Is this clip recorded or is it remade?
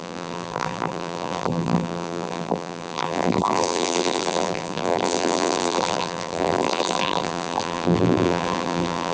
remade